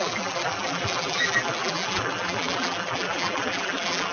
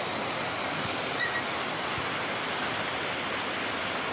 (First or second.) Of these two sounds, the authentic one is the second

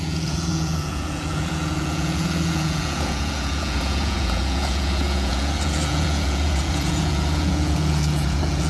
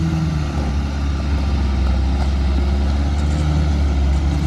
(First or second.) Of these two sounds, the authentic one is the second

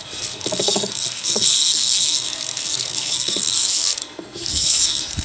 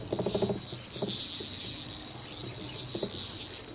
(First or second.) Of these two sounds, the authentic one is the second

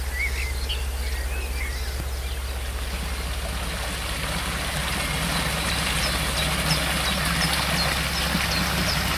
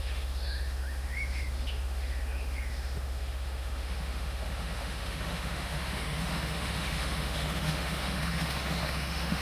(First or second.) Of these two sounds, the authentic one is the first